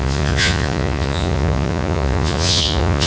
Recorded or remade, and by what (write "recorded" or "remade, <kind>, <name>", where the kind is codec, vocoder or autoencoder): remade, vocoder, Vocos